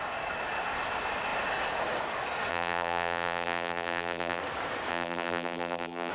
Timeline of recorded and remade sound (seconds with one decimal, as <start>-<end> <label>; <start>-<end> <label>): 0.0-2.5 recorded; 2.5-4.4 remade; 4.4-4.9 recorded; 4.9-6.1 remade